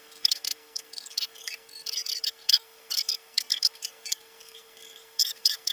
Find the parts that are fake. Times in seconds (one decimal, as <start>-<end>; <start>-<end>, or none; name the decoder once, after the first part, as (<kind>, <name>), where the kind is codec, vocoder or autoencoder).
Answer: 0.0-5.7 (codec, SNAC)